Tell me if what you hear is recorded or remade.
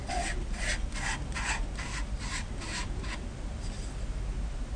recorded